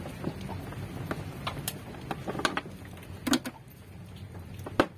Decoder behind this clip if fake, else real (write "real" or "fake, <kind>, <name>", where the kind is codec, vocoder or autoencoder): real